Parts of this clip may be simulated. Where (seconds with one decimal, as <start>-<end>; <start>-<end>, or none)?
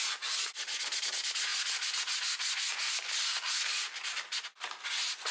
none